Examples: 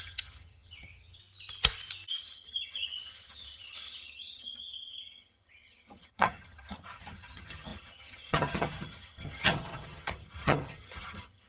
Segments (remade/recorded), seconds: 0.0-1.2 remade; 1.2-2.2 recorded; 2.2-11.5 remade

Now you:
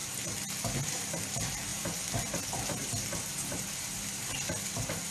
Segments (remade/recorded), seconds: 0.0-1.1 recorded; 1.1-5.1 remade